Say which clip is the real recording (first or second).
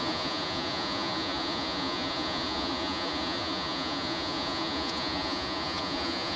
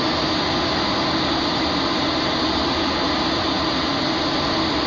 second